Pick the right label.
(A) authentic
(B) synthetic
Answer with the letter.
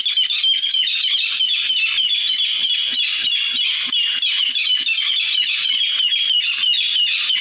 A